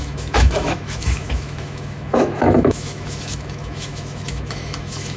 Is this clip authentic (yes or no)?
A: no